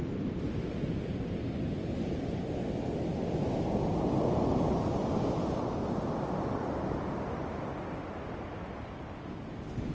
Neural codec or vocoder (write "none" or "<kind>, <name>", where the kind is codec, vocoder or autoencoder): none